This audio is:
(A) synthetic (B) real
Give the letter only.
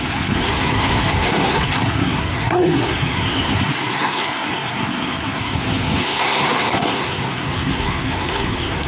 A